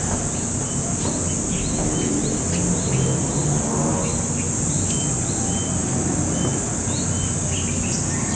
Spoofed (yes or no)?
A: no